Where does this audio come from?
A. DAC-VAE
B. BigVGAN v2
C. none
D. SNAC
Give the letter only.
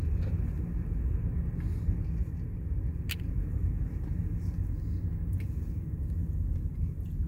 C